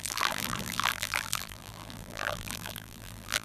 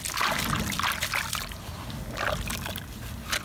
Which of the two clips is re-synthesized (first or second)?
first